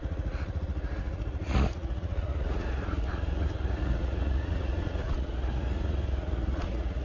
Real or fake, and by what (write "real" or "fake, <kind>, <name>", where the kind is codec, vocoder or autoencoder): fake, vocoder, Vocos